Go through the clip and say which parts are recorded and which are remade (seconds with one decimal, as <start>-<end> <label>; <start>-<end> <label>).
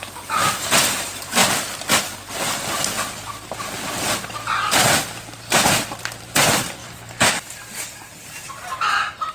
0.0-1.4 remade; 1.4-2.3 recorded; 2.3-9.3 remade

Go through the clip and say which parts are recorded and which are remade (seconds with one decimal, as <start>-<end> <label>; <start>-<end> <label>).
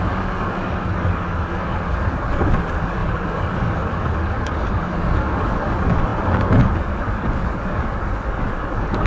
0.0-9.1 remade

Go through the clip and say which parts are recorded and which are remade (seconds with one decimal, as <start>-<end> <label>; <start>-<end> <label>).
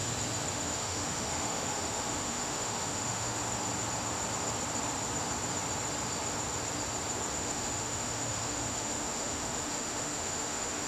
0.0-0.5 recorded; 0.5-3.4 remade; 3.4-7.3 recorded; 7.3-10.9 remade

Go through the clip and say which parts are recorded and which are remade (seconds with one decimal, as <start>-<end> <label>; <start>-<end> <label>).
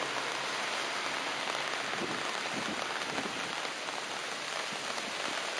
0.0-5.6 recorded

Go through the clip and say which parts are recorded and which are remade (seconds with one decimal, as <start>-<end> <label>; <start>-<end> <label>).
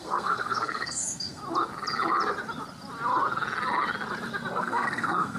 0.0-1.4 remade; 1.4-4.6 recorded; 4.6-5.4 remade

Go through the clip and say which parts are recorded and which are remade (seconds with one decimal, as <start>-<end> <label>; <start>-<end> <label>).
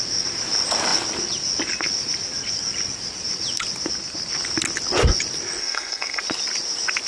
0.0-5.6 recorded; 5.6-6.2 remade; 6.2-7.1 recorded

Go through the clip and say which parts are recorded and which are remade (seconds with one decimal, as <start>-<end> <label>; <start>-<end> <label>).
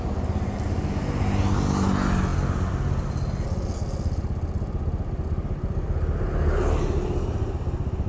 0.0-8.1 recorded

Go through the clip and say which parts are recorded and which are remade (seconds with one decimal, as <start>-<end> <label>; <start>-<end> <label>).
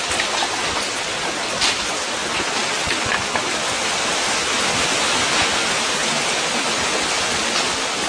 0.0-8.1 recorded